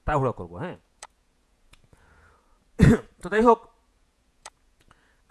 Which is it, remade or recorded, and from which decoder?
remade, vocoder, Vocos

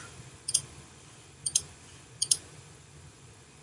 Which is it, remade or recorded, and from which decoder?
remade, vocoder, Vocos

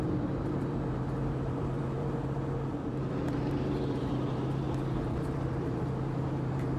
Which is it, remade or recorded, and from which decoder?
remade, vocoder, BigVGAN v2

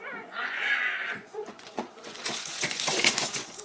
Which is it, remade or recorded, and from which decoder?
remade, vocoder, Vocos